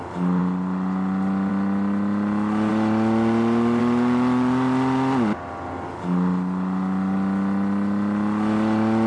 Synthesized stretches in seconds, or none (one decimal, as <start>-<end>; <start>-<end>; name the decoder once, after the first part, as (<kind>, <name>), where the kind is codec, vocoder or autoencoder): none